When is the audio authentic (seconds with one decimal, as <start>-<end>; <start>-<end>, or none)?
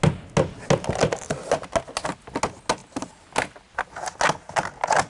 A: 0.0-5.1